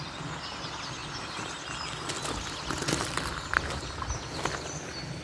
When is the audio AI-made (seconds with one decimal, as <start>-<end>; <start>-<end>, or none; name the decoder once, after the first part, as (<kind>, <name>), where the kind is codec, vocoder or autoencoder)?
none